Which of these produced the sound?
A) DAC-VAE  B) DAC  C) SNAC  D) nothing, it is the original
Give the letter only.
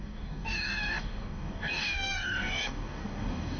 B